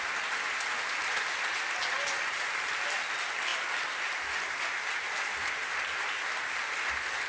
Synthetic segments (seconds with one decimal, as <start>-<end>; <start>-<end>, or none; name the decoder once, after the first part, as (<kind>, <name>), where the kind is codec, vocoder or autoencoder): none